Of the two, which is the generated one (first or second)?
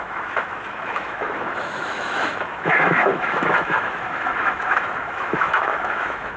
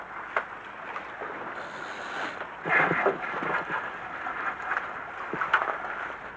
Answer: first